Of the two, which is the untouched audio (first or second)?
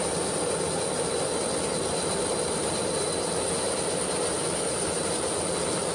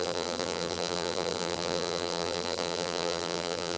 first